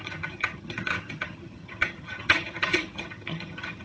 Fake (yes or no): yes